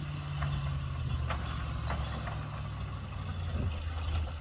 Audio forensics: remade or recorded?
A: recorded